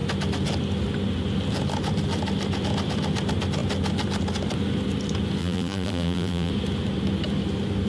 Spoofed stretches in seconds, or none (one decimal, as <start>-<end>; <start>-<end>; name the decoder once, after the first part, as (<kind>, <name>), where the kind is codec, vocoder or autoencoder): 5.4-6.5 (vocoder, BigVGAN v2)

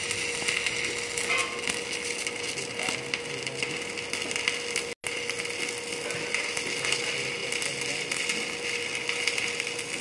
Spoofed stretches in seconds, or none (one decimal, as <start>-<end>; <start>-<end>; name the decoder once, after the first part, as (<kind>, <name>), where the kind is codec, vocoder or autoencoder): none

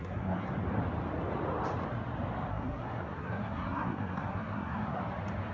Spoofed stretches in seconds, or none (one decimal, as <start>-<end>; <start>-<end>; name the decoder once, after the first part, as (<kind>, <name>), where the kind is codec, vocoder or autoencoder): 0.0-0.5 (codec, SNAC); 2.5-5.0

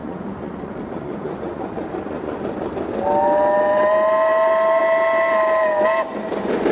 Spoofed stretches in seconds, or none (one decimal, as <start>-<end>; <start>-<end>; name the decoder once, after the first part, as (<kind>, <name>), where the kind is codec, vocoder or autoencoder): 0.0-2.7 (vocoder, Vocos)

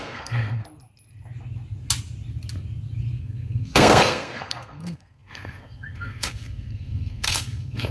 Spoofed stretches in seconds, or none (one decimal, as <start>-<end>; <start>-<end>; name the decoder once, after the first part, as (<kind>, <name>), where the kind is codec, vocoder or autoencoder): 0.0-0.6 (codec, SNAC); 3.2-7.9

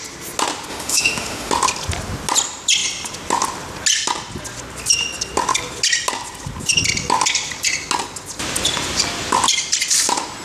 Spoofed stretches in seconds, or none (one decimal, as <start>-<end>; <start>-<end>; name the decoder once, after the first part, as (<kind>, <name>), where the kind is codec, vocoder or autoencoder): 0.7-1.5 (autoencoder, DAC-VAE)

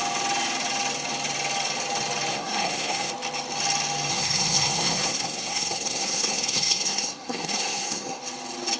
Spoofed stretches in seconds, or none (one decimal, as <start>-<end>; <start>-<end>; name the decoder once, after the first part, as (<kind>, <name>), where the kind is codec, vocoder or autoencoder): 2.3-3.1 (codec, SNAC); 4.1-8.2

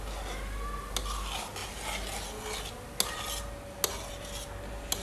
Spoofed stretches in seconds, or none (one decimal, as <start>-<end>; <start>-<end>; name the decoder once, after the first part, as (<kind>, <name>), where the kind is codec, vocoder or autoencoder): none